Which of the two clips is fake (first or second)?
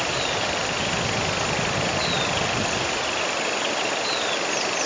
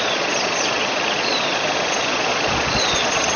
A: second